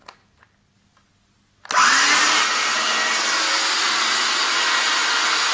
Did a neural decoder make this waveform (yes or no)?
no